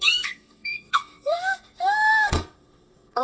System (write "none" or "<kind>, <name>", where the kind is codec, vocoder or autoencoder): codec, SNAC